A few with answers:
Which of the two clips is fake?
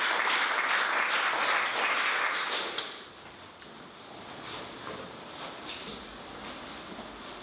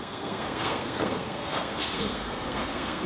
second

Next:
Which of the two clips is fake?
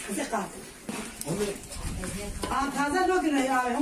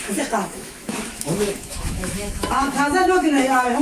second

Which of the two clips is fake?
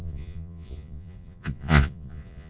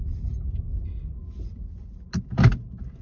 first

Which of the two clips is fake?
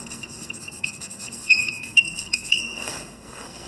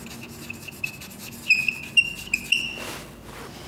first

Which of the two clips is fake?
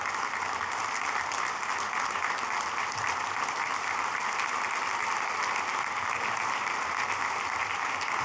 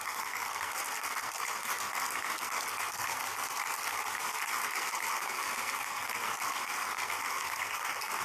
second